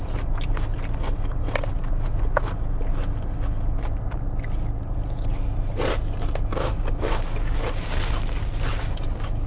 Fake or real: real